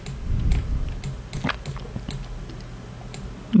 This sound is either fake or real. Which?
real